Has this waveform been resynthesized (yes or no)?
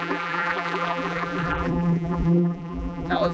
yes